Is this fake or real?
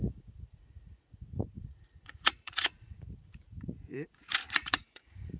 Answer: fake